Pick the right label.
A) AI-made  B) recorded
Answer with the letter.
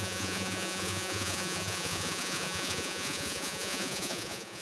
A